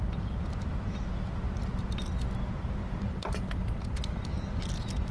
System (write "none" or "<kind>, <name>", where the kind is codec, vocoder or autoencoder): none